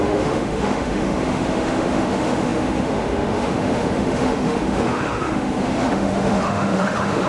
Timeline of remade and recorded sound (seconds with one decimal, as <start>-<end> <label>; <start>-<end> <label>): 0.0-7.3 remade